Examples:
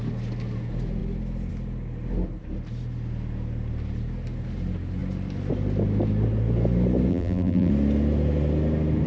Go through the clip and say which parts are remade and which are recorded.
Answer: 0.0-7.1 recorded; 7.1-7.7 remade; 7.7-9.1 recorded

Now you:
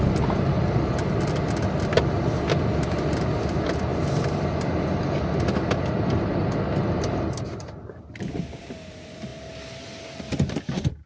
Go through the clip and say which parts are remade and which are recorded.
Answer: 0.0-11.1 recorded

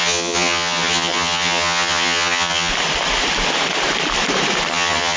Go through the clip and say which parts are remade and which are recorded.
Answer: 0.0-2.7 remade; 2.7-4.7 recorded; 4.7-5.2 remade

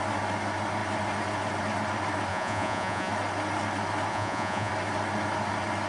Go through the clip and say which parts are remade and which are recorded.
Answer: 0.0-2.3 recorded; 2.3-3.1 remade; 3.1-4.1 recorded; 4.1-4.7 remade; 4.7-5.9 recorded

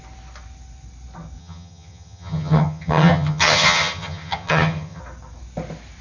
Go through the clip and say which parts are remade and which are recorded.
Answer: 0.0-1.4 recorded; 1.4-5.0 remade; 5.0-6.0 recorded

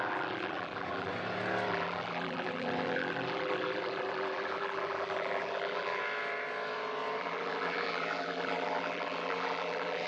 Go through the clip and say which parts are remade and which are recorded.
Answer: 0.0-1.1 remade; 1.1-1.7 recorded; 1.7-6.0 remade; 6.0-7.2 recorded; 7.2-10.1 remade

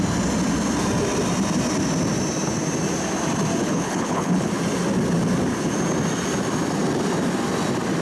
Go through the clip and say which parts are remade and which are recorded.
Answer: 0.0-3.6 recorded; 3.6-4.5 remade; 4.5-8.0 recorded

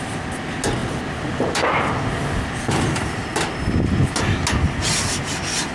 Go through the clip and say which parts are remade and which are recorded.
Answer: 0.0-5.7 recorded